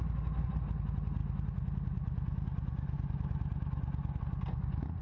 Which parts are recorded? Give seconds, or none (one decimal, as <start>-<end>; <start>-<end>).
0.0-5.0